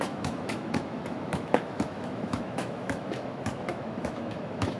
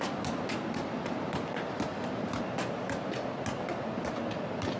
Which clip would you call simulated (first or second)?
first